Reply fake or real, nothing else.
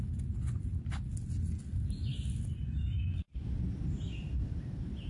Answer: real